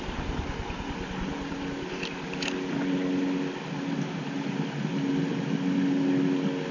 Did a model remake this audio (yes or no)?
no